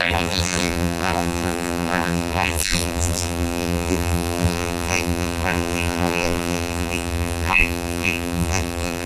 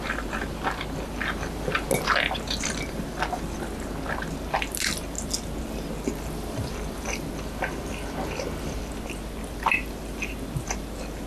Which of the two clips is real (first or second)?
second